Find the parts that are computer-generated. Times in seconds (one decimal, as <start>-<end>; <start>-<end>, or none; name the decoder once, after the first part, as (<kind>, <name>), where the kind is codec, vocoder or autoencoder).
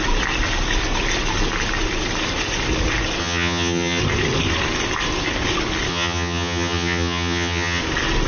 3.2-4.0 (vocoder, HiFi-GAN); 5.9-7.8